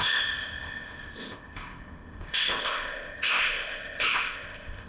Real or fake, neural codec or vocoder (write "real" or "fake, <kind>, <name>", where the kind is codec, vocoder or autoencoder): fake, codec, ZipCodec